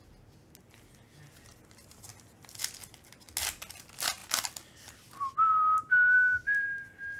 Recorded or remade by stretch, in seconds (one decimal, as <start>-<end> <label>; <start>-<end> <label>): 0.0-7.2 recorded